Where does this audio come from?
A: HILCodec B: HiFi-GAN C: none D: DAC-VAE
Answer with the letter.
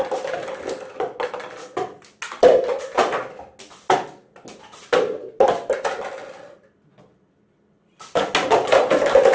C